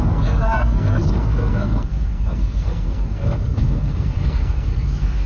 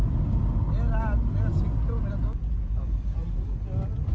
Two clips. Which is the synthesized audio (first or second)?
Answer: first